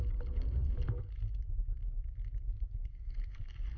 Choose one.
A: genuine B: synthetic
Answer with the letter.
A